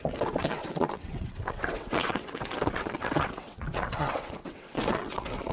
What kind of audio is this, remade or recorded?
remade